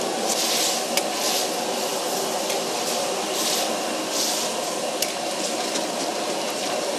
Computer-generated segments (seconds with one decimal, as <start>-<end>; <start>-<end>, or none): none